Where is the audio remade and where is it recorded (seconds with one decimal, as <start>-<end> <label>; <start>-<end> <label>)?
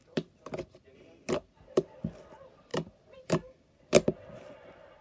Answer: 0.0-5.0 recorded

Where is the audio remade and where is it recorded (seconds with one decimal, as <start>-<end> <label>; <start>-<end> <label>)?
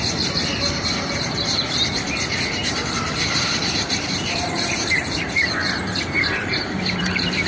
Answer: 0.0-5.6 remade; 5.6-6.2 recorded; 6.2-7.5 remade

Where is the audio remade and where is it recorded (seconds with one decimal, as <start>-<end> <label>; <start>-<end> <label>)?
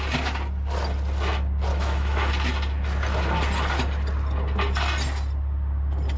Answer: 0.0-1.7 recorded; 1.7-2.3 remade; 2.3-6.2 recorded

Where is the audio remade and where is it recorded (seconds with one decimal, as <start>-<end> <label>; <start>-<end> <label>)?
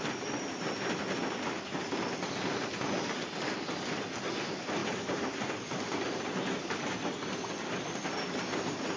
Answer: 0.0-4.8 recorded; 4.8-6.6 remade; 6.6-9.0 recorded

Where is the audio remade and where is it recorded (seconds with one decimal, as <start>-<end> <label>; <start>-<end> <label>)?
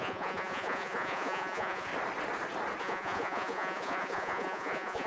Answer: 0.0-1.9 remade; 1.9-2.8 recorded; 2.8-5.1 remade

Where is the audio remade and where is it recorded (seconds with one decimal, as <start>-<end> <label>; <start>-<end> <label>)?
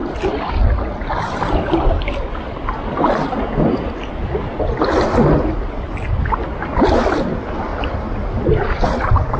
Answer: 0.0-9.4 recorded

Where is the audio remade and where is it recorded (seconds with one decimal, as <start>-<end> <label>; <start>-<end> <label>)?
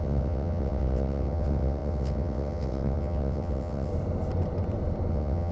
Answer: 0.0-3.9 remade; 3.9-5.1 recorded; 5.1-5.5 remade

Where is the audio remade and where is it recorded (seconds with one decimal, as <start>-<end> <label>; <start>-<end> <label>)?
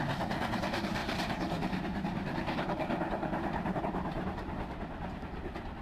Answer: 0.0-1.0 recorded; 1.0-3.8 remade; 3.8-5.8 recorded